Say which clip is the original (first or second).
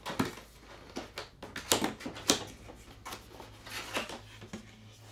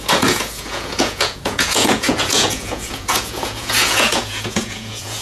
first